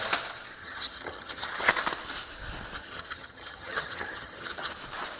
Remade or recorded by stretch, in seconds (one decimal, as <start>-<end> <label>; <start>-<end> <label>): 0.0-0.6 recorded; 0.6-1.7 remade; 1.7-2.8 recorded; 2.8-4.7 remade; 4.7-5.2 recorded